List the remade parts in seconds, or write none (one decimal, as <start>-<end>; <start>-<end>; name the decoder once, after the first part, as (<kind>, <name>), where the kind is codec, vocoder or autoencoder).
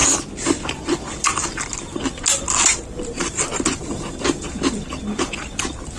none